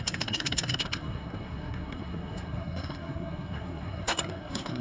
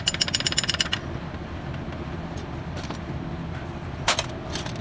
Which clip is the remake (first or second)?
first